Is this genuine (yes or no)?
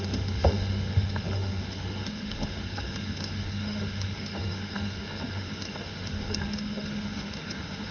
no